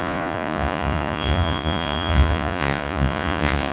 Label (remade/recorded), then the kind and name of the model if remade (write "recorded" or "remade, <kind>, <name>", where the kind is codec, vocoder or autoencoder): remade, vocoder, Vocos